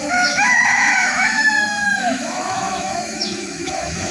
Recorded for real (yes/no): no